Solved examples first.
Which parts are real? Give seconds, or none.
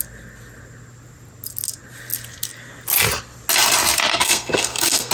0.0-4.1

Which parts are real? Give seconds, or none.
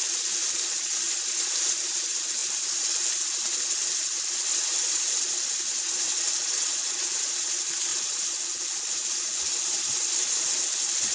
0.0-11.1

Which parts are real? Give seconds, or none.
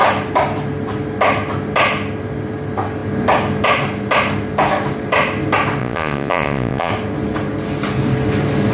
0.0-5.8; 6.9-8.7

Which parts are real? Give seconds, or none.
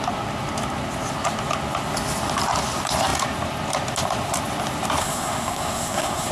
0.0-5.0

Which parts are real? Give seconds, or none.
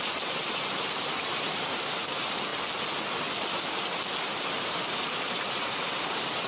2.5-4.5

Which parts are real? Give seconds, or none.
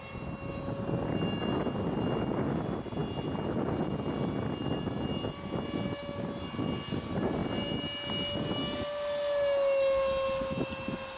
0.0-11.2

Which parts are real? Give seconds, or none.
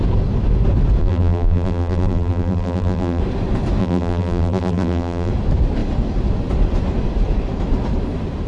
0.0-1.0; 3.2-3.8; 5.3-8.5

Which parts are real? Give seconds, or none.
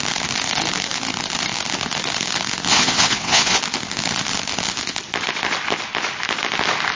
0.0-2.7; 3.6-7.0